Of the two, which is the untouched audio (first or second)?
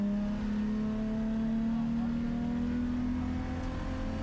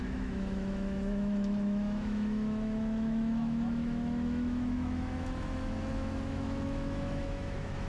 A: first